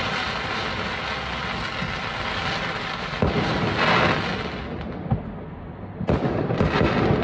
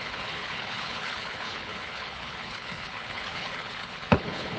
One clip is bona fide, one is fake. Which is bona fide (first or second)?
first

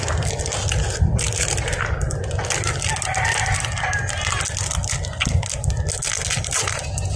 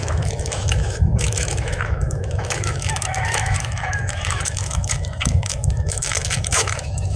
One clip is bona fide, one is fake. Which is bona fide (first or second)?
first